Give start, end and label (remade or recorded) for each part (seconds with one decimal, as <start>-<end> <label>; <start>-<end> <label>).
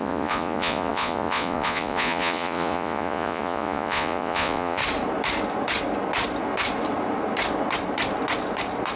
0.0-4.8 remade; 4.8-9.0 recorded